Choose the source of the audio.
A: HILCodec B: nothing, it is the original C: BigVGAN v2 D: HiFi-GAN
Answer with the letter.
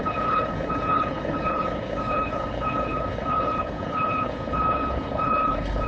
A